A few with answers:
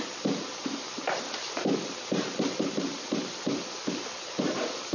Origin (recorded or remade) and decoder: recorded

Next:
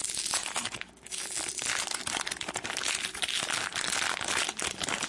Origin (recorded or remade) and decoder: recorded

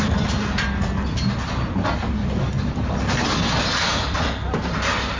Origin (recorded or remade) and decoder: recorded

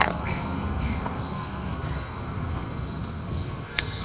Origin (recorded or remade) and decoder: remade, codec, SNAC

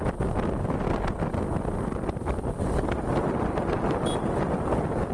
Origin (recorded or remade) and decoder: recorded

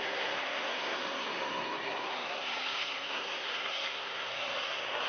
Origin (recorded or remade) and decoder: remade, codec, SNAC